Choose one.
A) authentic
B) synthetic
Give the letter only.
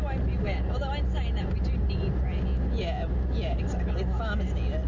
A